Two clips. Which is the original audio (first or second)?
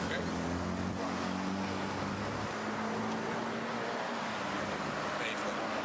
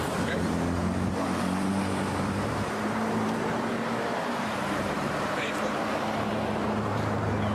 first